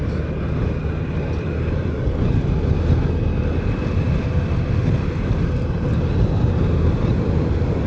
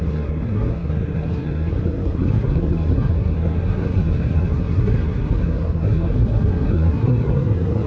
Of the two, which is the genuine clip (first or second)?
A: first